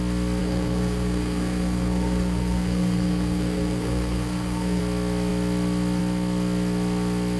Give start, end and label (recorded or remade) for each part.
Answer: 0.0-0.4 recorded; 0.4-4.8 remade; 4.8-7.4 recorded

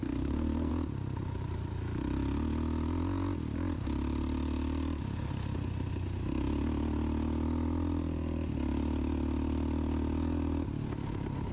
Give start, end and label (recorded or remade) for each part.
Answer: 0.0-0.7 remade; 0.7-11.5 recorded

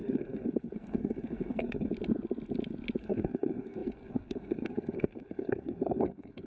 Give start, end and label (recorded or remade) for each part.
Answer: 0.0-1.9 remade; 1.9-3.0 recorded; 3.0-6.5 remade

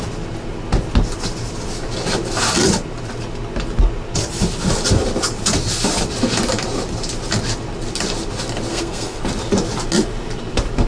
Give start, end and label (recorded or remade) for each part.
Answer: 0.0-8.7 recorded; 8.7-9.2 remade; 9.2-10.9 recorded

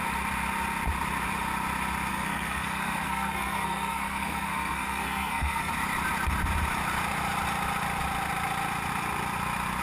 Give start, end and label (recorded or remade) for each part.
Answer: 0.0-2.1 recorded; 2.1-5.7 remade; 5.7-9.8 recorded

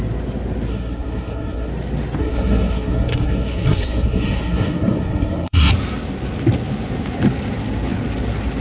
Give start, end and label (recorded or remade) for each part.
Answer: 0.0-0.7 recorded; 0.7-1.7 remade; 1.7-2.2 recorded; 2.2-5.7 remade; 5.7-8.6 recorded